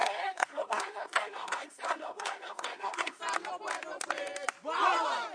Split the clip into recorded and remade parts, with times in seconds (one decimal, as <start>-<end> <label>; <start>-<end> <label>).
0.0-3.2 remade; 3.2-5.3 recorded